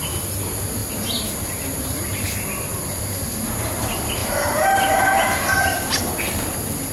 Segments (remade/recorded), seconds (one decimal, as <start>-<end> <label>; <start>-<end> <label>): 0.0-0.8 recorded; 0.8-2.0 remade; 2.0-4.2 recorded; 4.2-6.0 remade; 6.0-6.9 recorded